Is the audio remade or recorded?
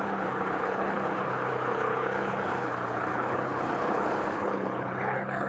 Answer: remade